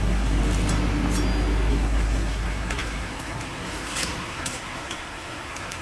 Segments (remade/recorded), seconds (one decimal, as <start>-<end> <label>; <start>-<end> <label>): 0.0-0.4 remade; 0.4-1.7 recorded; 1.7-5.8 remade